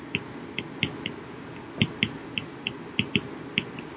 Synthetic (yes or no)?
no